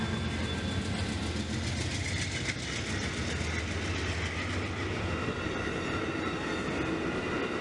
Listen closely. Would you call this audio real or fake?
real